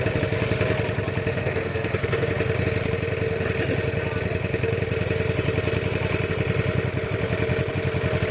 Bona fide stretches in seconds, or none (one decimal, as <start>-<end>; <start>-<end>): 0.0-1.3; 2.3-8.3